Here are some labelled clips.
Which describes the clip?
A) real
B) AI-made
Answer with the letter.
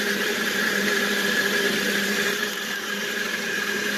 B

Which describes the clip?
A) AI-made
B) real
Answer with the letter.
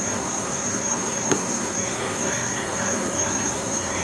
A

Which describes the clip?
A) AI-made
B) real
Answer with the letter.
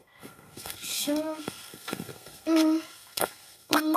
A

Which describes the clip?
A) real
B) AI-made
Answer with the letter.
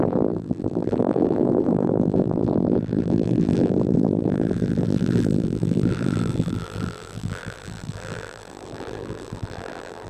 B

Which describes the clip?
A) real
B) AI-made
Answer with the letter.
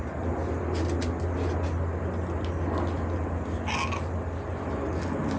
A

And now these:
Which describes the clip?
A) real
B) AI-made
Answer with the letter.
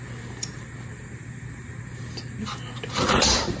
A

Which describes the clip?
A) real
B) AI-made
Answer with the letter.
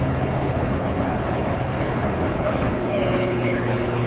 B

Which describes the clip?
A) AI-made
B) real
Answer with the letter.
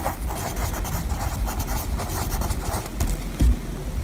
B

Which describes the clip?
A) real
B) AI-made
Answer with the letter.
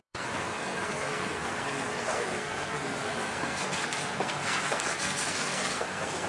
B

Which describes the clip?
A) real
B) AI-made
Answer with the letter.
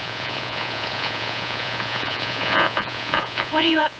B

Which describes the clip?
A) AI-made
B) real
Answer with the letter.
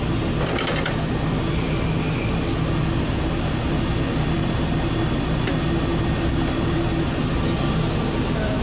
B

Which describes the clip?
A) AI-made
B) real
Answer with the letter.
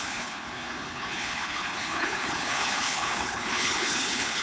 A